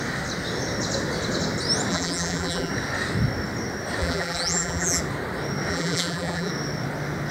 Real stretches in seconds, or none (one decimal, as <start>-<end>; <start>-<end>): 0.0-1.9; 2.7-4.0; 5.0-5.7; 6.5-7.3